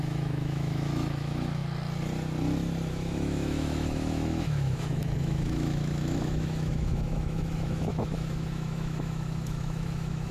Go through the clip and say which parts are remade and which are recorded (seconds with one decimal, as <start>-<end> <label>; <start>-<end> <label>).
0.0-1.6 remade; 1.6-2.9 recorded; 2.9-10.3 remade